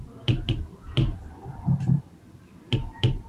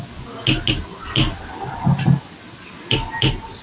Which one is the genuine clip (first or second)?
second